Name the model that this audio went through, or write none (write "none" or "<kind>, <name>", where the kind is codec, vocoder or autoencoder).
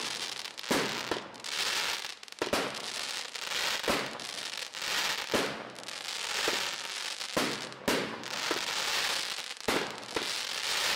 none